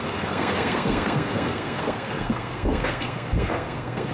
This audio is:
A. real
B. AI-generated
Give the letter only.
B